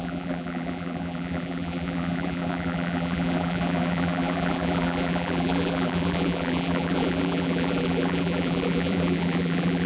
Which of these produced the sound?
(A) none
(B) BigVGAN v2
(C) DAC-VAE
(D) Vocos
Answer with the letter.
B